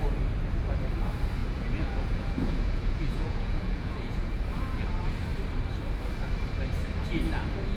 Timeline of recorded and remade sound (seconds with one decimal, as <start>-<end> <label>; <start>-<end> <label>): 0.0-1.4 recorded; 1.4-4.4 remade; 4.4-7.8 recorded